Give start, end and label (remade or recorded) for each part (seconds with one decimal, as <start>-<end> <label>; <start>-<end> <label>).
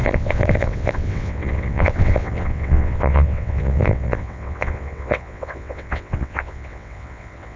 0.0-7.6 remade